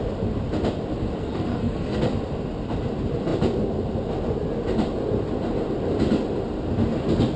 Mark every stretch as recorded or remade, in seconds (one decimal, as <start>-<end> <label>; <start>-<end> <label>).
0.0-1.2 recorded; 1.2-2.0 remade; 2.0-7.4 recorded